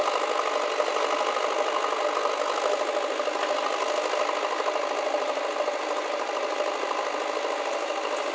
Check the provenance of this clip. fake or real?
real